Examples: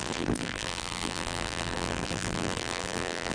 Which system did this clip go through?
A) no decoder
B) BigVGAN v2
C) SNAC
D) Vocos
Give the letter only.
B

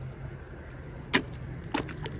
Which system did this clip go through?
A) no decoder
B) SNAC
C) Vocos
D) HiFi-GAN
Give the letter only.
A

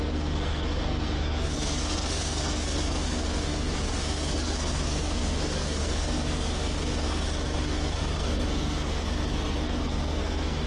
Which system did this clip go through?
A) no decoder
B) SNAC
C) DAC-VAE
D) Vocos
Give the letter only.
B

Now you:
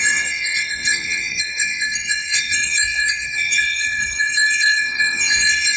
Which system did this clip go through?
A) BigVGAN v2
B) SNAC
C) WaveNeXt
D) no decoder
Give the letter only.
C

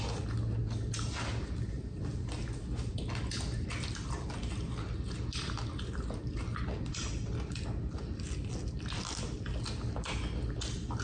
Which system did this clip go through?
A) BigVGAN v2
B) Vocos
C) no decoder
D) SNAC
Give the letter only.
C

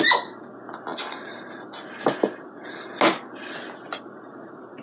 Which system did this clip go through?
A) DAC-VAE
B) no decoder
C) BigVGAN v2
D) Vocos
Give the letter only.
B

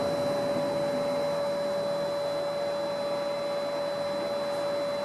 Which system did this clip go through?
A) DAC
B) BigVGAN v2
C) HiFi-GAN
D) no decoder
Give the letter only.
D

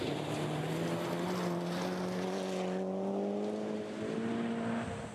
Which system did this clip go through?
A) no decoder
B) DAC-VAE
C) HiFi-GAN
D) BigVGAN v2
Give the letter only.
A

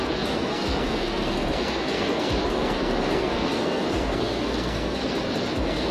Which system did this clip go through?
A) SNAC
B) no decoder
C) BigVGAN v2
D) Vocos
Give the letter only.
A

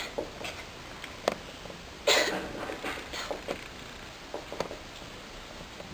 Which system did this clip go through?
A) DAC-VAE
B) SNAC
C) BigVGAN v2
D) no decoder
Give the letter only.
D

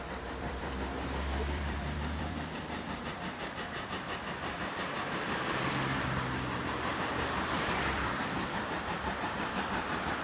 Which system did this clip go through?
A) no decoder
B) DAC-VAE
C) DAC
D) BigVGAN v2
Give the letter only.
D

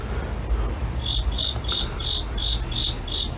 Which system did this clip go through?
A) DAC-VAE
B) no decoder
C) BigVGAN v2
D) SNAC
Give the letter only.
B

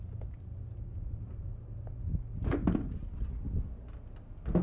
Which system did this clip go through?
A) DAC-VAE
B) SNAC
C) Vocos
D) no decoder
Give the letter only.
D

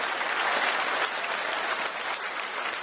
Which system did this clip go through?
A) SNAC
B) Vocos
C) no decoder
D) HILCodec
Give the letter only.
C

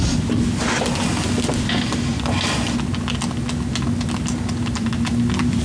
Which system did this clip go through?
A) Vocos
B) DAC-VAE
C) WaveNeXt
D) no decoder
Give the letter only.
D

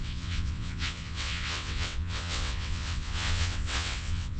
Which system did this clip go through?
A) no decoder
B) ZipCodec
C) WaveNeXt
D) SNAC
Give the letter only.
C